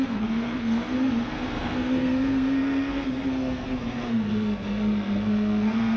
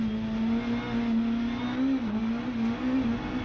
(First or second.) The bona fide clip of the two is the second